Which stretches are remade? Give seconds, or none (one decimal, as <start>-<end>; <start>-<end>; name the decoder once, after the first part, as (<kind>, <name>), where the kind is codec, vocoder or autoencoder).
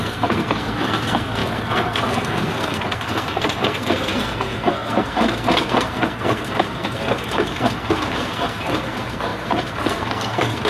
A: 0.0-10.7 (codec, SNAC)